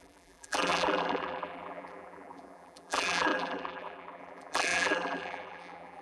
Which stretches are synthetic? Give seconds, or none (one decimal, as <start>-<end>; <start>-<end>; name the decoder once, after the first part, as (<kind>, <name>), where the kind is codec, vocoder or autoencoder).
0.0-6.0 (vocoder, BigVGAN v2)